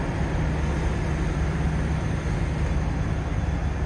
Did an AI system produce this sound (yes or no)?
no